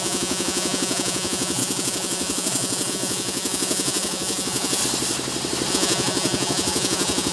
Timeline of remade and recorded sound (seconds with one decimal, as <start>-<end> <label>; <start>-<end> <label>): 0.0-4.8 remade; 4.8-5.7 recorded; 5.7-7.3 remade